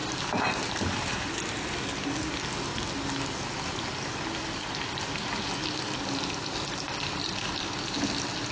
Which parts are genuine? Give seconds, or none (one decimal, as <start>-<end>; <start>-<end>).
1.3-8.5